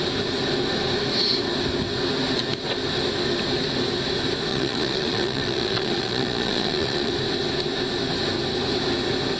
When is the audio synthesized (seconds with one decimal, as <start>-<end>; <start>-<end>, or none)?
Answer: 4.5-7.1